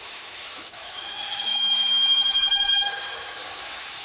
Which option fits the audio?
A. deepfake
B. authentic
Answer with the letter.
A